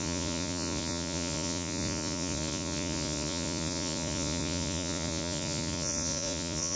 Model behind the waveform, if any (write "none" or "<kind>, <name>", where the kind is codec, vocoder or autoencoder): vocoder, Vocos